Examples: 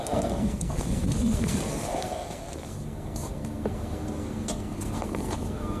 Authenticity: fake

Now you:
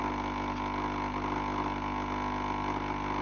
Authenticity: real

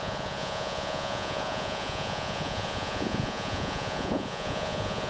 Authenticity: fake